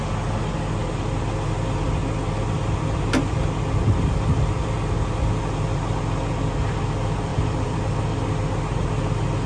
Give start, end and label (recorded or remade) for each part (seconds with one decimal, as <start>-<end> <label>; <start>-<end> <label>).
0.0-7.3 recorded; 7.3-7.8 remade; 7.8-9.5 recorded